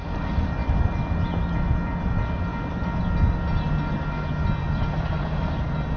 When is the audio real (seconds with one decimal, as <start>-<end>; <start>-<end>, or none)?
0.0-4.6; 5.2-6.0